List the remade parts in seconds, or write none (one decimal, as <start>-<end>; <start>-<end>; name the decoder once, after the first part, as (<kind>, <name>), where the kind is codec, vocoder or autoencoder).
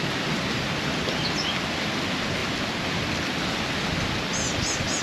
none